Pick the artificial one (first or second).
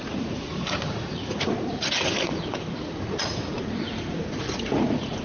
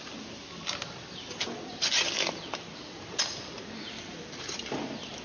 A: first